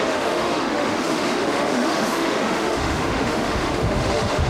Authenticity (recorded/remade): remade